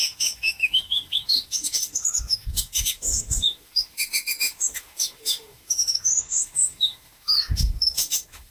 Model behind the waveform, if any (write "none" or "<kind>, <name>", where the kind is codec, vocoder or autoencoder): autoencoder, DAC-VAE